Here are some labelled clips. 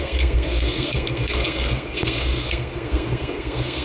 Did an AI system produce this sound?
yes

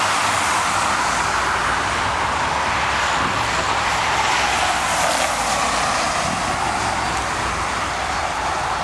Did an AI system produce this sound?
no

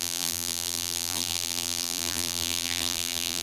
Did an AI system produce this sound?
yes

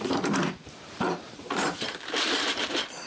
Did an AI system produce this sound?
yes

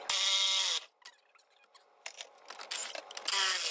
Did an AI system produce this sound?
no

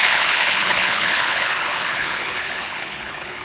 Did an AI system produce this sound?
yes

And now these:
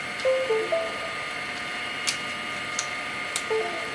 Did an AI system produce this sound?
no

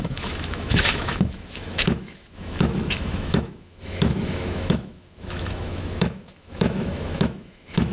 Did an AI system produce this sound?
yes